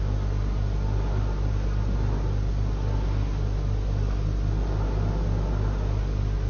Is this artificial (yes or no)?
no